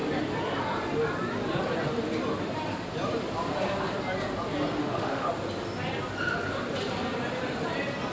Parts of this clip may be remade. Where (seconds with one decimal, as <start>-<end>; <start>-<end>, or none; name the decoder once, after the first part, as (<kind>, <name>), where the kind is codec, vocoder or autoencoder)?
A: 4.8-5.3 (autoencoder, DAC-VAE)